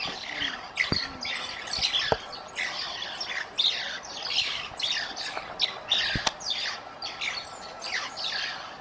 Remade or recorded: recorded